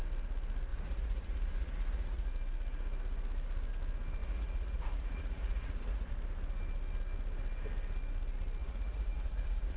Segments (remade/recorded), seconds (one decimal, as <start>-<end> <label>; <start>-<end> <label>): 0.0-0.7 recorded; 0.7-2.3 remade; 2.3-4.2 recorded; 4.2-6.1 remade; 6.1-8.6 recorded; 8.6-9.8 remade

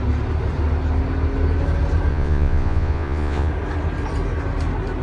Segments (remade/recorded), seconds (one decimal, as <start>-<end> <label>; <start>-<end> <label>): 0.0-2.1 recorded; 2.1-3.5 remade; 3.5-5.0 recorded